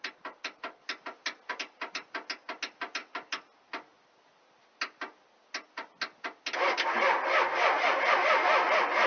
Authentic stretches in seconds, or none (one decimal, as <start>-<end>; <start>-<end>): 0.0-9.1